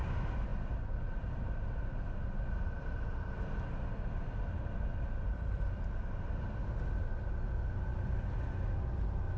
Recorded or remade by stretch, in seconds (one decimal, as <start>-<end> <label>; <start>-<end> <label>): 0.0-9.4 recorded